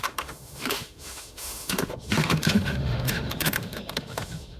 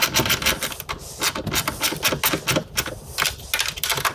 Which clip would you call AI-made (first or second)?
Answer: first